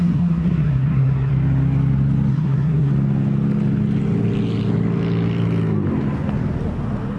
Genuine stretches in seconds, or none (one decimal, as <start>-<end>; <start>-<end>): 1.3-2.3; 2.9-7.2